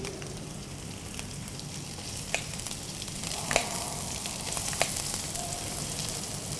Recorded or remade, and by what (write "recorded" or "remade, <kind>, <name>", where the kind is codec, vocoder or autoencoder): remade, vocoder, BigVGAN v2